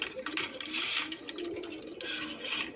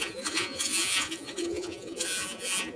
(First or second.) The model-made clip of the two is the second